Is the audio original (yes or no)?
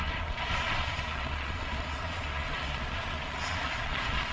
no